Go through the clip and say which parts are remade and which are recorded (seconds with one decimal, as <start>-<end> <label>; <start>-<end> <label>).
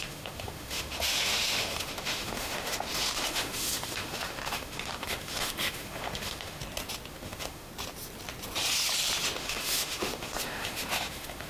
0.0-6.6 remade; 6.6-7.1 recorded; 7.1-7.7 remade; 7.7-9.4 recorded; 9.4-11.5 remade